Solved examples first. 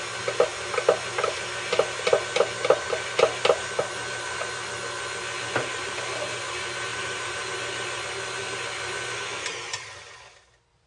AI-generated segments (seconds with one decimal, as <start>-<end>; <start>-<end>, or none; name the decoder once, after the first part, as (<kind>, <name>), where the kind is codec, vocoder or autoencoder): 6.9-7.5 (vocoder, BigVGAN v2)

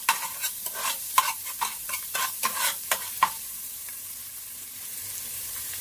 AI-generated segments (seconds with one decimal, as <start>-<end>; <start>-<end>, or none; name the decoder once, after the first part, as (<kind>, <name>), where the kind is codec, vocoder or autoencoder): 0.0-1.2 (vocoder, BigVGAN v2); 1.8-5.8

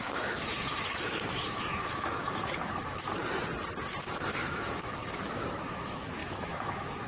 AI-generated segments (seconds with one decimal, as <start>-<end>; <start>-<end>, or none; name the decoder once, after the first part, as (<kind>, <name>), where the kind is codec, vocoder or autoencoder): 0.0-3.2 (autoencoder, DAC-VAE); 4.0-7.1

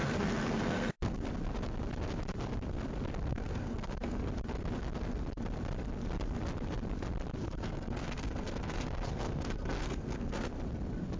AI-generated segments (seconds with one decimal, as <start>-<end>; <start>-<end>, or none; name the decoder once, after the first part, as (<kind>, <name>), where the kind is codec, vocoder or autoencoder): 0.0-0.9 (codec, SNAC); 3.3-4.2; 7.4-10.5

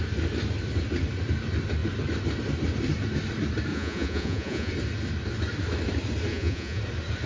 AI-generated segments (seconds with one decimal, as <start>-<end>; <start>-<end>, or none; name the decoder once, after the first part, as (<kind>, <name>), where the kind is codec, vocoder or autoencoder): 3.7-4.7 (vocoder, Vocos); 6.3-6.8

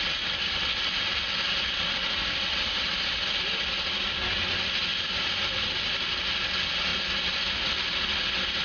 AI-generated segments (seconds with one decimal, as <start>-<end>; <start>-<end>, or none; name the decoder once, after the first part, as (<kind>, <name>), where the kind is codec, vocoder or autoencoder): none

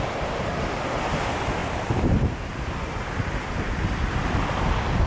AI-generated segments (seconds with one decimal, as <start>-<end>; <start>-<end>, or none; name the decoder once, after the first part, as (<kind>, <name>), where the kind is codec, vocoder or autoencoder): 1.6-4.2 (vocoder, BigVGAN v2)